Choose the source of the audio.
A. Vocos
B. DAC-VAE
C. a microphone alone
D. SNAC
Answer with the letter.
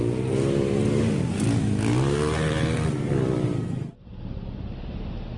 C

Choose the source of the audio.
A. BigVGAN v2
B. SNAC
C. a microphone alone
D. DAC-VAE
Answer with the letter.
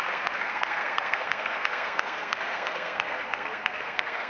B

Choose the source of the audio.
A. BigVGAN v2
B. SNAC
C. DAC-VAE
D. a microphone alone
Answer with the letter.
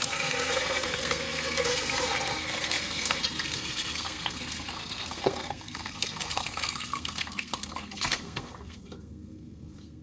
B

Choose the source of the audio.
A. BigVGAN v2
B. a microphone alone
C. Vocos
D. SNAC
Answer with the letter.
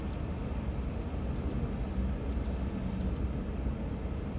B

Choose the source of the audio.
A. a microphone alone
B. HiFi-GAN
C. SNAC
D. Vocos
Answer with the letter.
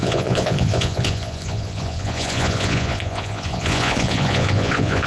D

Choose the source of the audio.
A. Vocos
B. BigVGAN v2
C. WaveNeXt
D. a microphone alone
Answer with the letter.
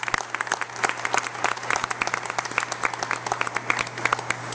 D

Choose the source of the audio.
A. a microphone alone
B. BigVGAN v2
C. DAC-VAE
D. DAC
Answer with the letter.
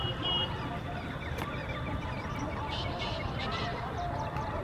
A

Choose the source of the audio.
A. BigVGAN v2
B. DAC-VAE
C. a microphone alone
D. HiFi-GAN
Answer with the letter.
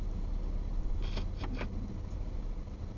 C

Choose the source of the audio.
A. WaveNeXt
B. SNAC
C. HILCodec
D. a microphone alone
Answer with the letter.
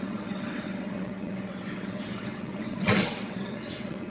A